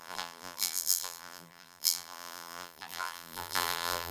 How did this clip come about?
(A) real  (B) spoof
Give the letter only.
B